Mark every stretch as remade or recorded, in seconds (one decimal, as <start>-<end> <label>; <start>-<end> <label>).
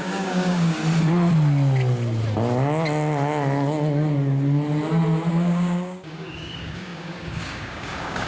0.0-0.8 remade; 0.8-5.3 recorded; 5.3-8.3 remade